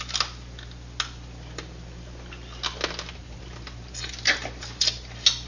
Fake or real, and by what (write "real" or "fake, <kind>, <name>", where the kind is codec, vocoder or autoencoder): real